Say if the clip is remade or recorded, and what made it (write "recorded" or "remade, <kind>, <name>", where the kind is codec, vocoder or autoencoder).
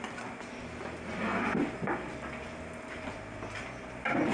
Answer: recorded